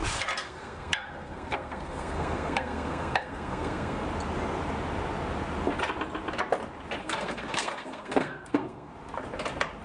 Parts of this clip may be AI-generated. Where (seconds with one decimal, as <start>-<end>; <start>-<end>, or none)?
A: 0.4-4.0; 7.0-8.9